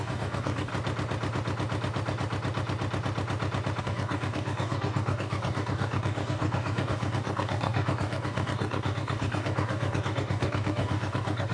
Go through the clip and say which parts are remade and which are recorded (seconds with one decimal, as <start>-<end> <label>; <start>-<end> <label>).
0.0-0.7 remade; 0.7-3.8 recorded; 3.8-11.5 remade